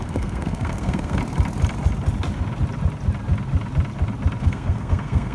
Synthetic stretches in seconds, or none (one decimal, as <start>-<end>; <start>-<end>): 0.0-1.2; 4.4-5.3